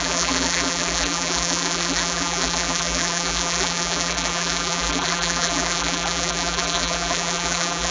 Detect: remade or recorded remade